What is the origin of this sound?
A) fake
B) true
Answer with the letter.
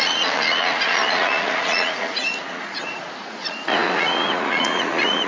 A